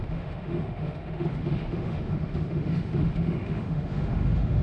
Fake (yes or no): yes